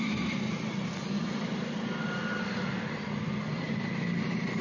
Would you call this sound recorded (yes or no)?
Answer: yes